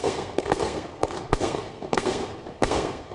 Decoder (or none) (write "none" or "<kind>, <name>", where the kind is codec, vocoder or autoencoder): codec, SNAC